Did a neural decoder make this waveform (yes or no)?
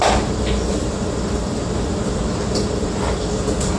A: no